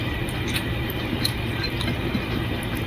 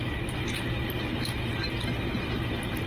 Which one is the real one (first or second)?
second